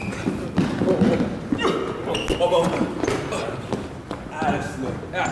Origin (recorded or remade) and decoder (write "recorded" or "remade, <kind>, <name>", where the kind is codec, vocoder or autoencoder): recorded